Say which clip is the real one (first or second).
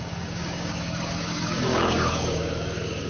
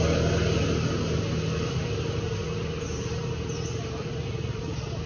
second